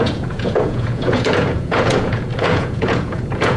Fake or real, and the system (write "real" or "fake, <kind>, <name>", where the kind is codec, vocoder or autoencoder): fake, vocoder, Vocos